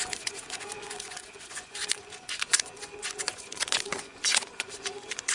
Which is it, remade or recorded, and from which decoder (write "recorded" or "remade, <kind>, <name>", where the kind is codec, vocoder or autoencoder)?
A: remade, vocoder, Vocos